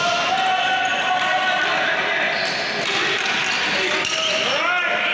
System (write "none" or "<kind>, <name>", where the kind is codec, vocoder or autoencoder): none